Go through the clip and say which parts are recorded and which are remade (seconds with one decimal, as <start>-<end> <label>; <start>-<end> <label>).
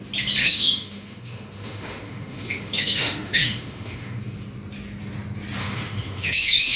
0.0-0.4 recorded; 0.4-4.2 remade; 4.2-5.6 recorded; 5.6-6.8 remade